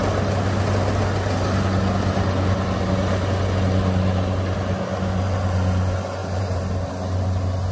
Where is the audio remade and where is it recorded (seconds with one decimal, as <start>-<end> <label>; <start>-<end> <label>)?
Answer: 0.0-6.2 recorded; 6.2-6.9 remade; 6.9-7.7 recorded